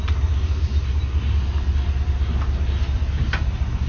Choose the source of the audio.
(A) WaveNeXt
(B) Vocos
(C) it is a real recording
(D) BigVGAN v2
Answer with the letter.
C